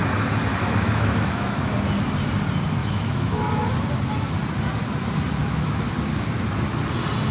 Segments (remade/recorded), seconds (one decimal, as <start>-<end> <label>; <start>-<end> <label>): 0.0-0.5 recorded; 0.5-1.7 remade; 1.7-2.8 recorded; 2.8-3.5 remade; 3.5-5.4 recorded; 5.4-5.9 remade; 5.9-7.3 recorded